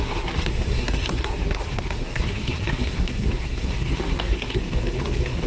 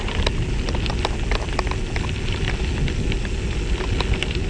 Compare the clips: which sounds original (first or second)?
second